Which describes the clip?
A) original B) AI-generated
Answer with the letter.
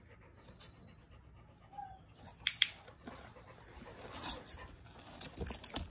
A